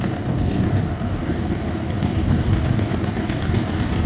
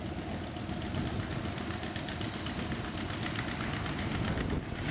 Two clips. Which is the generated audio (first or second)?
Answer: first